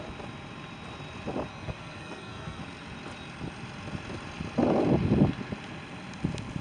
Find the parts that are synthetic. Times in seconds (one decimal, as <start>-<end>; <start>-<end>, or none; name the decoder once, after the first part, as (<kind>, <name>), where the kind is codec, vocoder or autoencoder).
1.5-2.6 (codec, SNAC)